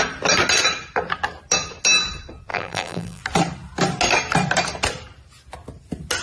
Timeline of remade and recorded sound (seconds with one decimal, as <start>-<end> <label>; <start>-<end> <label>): 0.0-2.5 recorded; 2.5-3.2 remade; 3.2-6.2 recorded